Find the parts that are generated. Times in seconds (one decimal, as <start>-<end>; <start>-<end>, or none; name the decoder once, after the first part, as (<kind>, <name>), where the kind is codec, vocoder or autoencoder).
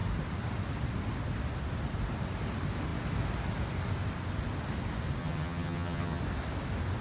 5.2-6.2 (vocoder, HiFi-GAN)